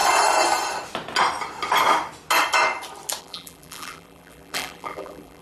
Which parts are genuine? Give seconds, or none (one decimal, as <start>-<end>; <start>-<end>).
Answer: 0.0-3.2